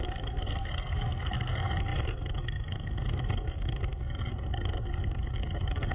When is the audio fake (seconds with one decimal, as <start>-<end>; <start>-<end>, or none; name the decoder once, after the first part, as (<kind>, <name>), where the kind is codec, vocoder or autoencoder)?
0.0-5.9 (codec, SNAC)